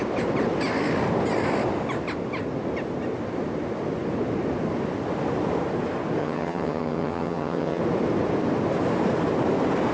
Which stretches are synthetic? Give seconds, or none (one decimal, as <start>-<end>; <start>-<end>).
6.2-7.8